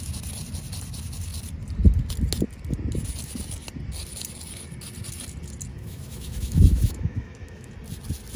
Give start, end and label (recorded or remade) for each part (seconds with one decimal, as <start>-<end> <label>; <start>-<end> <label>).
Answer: 0.0-5.7 recorded; 5.7-7.7 remade; 7.7-8.4 recorded

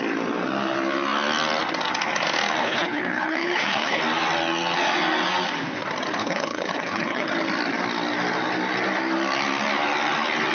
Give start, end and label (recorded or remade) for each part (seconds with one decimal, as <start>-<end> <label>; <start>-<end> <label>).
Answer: 0.0-2.6 recorded; 2.6-4.0 remade; 4.0-6.2 recorded; 6.2-7.3 remade; 7.3-10.5 recorded

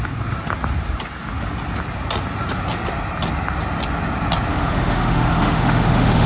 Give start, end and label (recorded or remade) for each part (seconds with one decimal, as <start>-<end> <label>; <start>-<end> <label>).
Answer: 0.0-4.5 recorded; 4.5-6.3 remade